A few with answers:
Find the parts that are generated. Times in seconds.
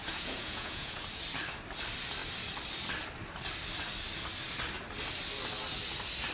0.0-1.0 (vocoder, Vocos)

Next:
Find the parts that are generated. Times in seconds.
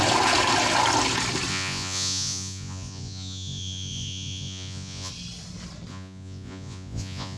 1.5-5.1 (vocoder, Vocos); 5.9-7.4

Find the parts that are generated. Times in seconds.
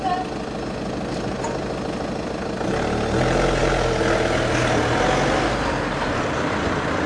none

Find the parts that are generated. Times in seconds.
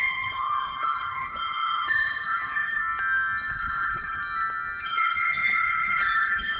0.0-2.8 (codec, HILCodec); 3.5-4.2; 4.8-6.6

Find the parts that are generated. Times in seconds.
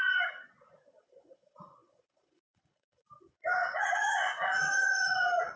0.0-5.6 (vocoder, Vocos)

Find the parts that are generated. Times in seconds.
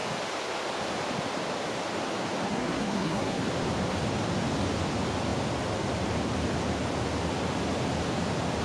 2.5-3.4 (codec, SNAC)